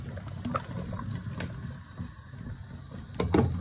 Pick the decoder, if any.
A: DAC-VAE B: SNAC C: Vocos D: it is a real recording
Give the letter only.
D